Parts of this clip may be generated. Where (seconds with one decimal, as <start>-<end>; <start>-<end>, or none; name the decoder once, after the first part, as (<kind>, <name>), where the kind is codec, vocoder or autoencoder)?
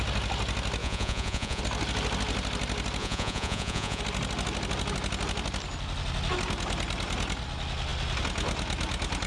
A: 0.8-1.6 (vocoder, Vocos); 3.0-4.0